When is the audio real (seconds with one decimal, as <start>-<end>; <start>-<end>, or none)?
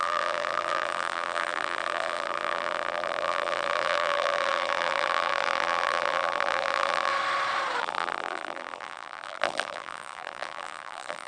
7.1-7.8